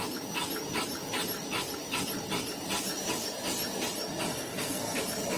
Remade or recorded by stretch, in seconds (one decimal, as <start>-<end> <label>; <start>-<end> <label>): 0.0-4.3 recorded; 4.3-5.0 remade; 5.0-5.4 recorded